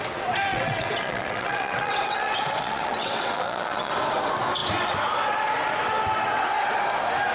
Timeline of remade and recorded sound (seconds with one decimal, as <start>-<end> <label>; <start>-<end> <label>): 0.0-0.5 recorded; 0.5-3.9 remade; 3.9-7.3 recorded